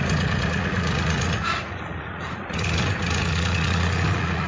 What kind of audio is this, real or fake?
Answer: fake